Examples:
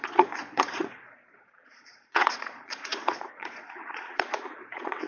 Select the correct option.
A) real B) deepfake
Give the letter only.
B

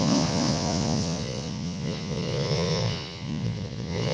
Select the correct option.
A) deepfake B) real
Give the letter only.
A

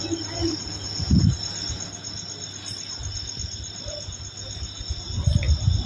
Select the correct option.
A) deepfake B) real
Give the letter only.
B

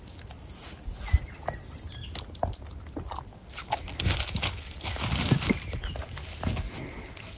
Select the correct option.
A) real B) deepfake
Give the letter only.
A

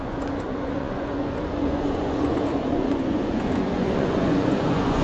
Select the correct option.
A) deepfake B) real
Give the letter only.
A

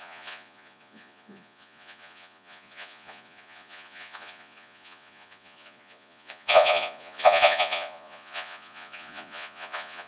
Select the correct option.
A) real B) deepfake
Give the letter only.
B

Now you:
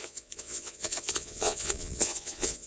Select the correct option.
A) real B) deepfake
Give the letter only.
B